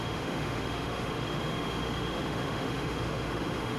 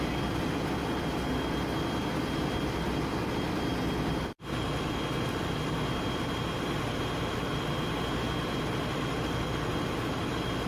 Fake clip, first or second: first